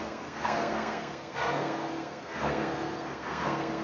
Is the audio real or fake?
fake